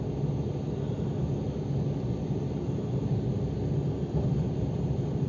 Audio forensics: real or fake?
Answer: real